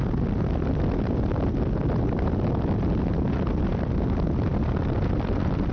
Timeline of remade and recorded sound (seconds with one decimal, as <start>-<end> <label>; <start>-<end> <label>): 0.0-5.7 recorded